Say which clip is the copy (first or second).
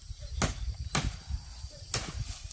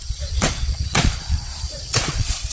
second